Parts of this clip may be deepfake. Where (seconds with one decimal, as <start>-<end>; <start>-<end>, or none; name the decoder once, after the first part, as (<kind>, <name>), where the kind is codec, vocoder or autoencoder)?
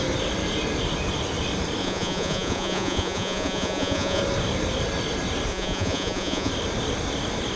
1.8-4.2 (vocoder, Vocos); 5.5-6.5